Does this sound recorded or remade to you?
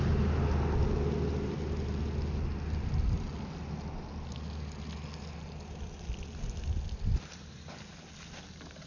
recorded